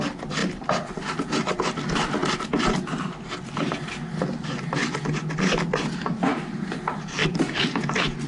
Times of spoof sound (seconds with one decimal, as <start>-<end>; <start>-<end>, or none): none